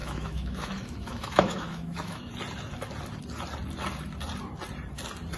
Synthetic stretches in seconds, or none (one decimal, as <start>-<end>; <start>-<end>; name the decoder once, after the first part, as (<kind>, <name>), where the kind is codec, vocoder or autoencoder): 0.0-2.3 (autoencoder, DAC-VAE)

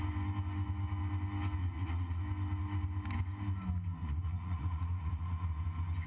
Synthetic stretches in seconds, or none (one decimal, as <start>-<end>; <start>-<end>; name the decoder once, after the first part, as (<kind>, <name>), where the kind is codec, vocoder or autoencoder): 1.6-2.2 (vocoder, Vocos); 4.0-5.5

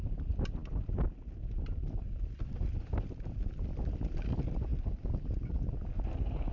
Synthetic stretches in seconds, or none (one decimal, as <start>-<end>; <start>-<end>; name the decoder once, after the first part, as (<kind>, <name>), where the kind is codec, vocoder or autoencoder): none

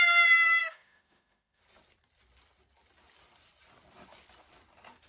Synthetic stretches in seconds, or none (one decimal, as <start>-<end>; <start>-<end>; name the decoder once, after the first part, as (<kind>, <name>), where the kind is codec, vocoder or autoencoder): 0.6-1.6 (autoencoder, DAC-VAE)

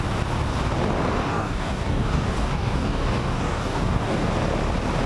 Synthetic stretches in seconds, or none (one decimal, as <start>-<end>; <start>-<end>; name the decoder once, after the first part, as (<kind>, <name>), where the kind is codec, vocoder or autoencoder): 1.2-4.3 (codec, DAC)

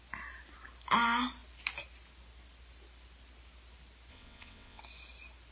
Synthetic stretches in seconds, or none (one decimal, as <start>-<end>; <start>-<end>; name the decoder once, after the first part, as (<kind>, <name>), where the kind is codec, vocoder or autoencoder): 4.1-4.8 (vocoder, WaveNeXt)

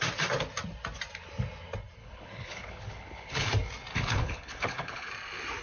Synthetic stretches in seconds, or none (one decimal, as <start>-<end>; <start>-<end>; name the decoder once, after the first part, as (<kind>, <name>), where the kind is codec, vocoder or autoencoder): 2.0-3.5 (codec, HILCodec); 3.9-5.1

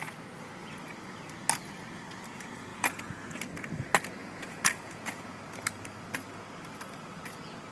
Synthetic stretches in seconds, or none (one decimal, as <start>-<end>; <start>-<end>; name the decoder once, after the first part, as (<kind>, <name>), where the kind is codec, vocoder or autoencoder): 2.7-3.4 (vocoder, Vocos); 4.2-5.4